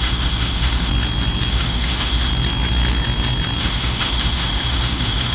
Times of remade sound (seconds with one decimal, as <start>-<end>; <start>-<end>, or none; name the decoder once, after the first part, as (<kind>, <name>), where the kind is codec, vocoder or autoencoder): 0.0-0.9 (autoencoder, DAC-VAE); 1.5-2.3; 3.6-5.3